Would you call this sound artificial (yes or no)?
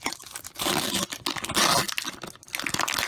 no